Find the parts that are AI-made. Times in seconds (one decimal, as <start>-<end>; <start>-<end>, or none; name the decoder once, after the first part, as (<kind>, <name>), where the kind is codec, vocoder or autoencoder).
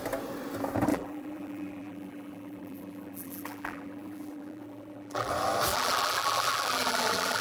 0.9-5.3 (vocoder, BigVGAN v2); 5.7-7.4